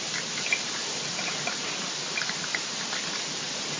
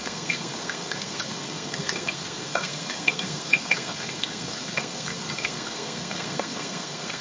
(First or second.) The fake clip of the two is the second